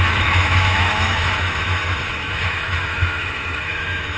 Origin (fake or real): fake